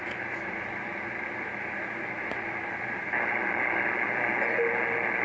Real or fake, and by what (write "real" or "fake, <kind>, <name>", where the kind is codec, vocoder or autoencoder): real